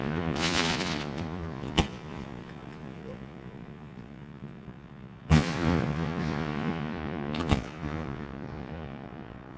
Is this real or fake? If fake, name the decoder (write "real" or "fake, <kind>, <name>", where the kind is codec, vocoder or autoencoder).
fake, vocoder, Vocos